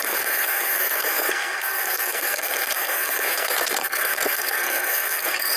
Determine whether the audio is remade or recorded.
remade